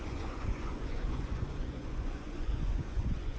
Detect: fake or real fake